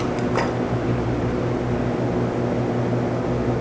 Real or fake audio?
real